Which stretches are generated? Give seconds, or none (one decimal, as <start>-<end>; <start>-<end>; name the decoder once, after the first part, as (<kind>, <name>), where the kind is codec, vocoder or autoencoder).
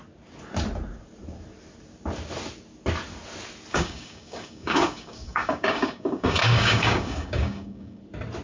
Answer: 3.7-8.0 (codec, DAC)